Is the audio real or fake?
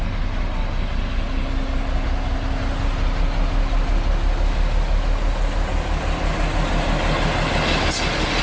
real